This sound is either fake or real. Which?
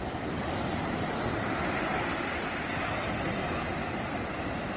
real